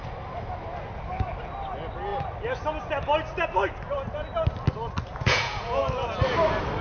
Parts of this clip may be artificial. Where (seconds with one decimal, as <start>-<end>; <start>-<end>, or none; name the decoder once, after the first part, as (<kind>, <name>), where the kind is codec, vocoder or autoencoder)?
5.1-5.8 (vocoder, Vocos)